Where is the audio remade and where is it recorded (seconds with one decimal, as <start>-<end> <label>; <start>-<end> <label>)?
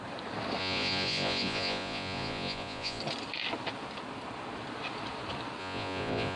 0.0-0.6 recorded; 0.6-3.0 remade; 3.0-5.6 recorded; 5.6-6.4 remade